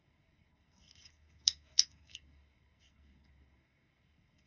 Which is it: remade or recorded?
remade